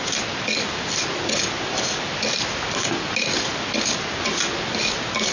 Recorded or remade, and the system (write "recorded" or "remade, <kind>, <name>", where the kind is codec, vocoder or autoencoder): recorded